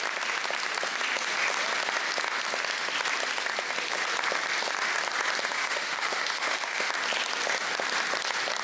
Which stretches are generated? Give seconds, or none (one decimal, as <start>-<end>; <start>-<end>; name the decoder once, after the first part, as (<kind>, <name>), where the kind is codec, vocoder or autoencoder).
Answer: 5.6-6.9 (autoencoder, DAC-VAE)